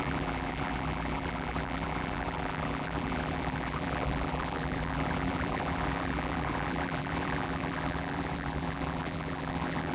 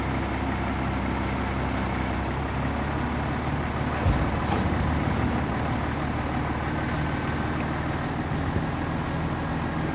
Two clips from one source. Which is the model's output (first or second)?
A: first